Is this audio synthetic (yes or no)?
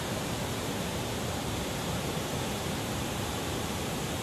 yes